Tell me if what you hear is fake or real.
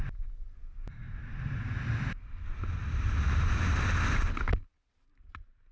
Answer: real